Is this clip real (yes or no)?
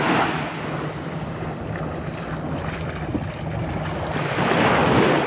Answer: yes